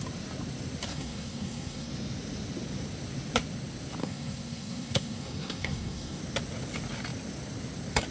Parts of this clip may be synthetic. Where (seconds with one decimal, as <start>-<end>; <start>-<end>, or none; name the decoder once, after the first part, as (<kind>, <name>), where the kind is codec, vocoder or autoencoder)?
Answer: 0.9-1.9 (codec, SNAC); 4.0-6.2